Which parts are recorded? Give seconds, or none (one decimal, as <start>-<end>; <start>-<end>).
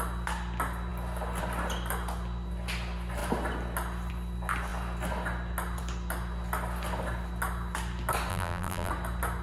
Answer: 0.0-8.3; 8.9-9.4